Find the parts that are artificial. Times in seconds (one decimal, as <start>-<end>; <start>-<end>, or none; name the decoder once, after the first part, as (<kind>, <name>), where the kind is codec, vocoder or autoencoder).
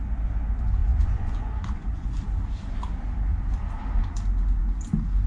0.8-2.2 (vocoder, Vocos)